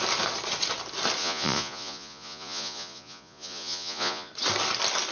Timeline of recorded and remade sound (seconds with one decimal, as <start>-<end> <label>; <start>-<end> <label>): 0.0-1.2 recorded; 1.2-4.3 remade; 4.3-5.1 recorded